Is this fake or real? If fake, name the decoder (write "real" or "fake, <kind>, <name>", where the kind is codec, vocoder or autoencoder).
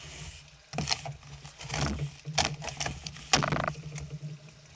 real